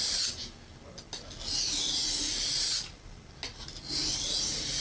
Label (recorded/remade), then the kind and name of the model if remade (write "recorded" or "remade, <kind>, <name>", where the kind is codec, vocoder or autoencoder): recorded